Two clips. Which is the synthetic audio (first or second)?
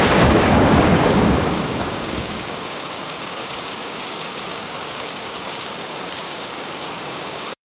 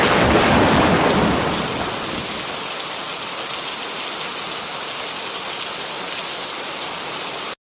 first